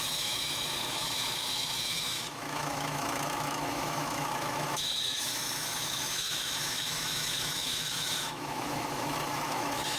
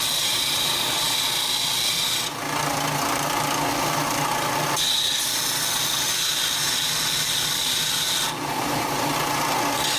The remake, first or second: first